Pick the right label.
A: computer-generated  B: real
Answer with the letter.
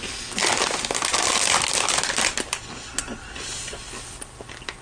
B